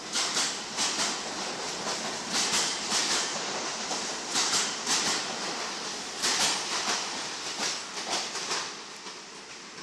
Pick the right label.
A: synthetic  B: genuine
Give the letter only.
B